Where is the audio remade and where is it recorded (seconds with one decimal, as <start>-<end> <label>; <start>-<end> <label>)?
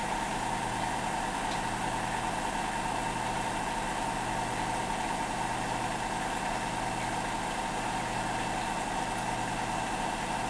0.0-1.7 remade; 1.7-10.5 recorded